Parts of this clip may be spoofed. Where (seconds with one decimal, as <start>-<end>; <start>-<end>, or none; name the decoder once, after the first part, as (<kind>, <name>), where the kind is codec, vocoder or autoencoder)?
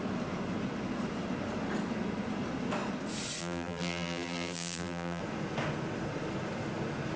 3.4-5.2 (vocoder, BigVGAN v2)